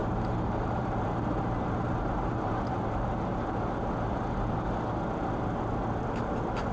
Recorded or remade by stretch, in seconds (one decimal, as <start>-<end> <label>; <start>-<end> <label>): 0.0-3.4 remade; 3.4-6.7 recorded